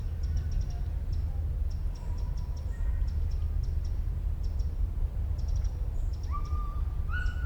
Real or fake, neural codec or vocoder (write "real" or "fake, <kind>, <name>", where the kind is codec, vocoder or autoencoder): real